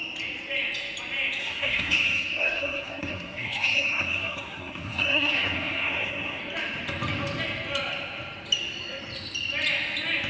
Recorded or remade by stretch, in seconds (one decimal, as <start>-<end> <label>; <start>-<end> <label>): 0.0-1.4 recorded; 1.4-6.4 remade; 6.4-10.3 recorded